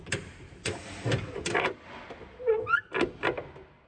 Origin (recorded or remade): recorded